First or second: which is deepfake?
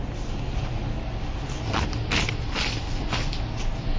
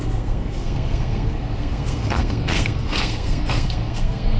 second